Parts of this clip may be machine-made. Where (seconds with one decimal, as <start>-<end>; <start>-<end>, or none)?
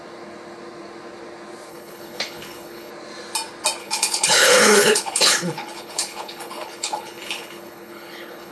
1.7-2.9; 3.8-8.5